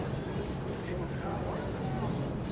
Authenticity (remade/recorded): recorded